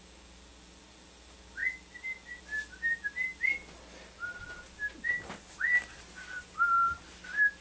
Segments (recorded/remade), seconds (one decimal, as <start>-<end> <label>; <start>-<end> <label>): 0.0-7.6 recorded